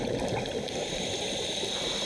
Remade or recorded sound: recorded